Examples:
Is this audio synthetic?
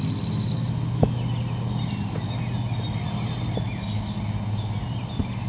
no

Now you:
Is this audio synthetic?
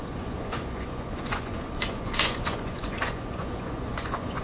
yes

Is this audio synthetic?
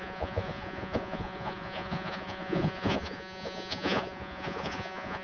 yes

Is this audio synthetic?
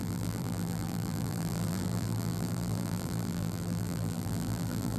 yes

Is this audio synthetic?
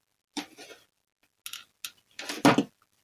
no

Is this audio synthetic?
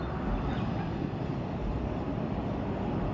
no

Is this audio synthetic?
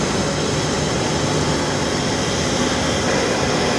no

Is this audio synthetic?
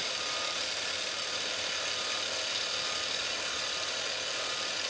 no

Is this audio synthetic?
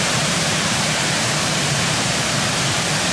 yes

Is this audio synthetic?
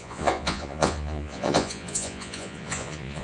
yes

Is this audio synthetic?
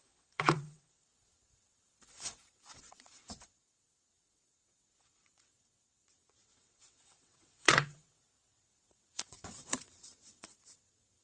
yes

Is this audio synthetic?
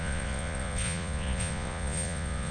yes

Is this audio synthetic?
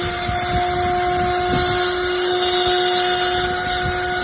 no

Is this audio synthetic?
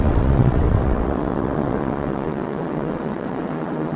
yes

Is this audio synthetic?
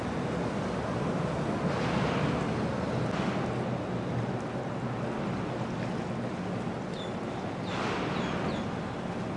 no